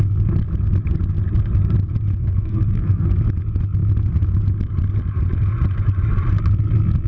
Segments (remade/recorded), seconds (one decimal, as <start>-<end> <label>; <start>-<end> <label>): 0.0-2.2 recorded; 2.2-3.1 remade; 3.1-7.1 recorded

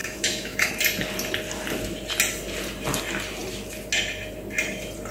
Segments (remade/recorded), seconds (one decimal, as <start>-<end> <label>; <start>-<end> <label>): 0.0-0.7 remade; 0.7-5.1 recorded